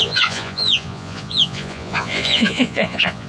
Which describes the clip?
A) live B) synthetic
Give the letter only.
B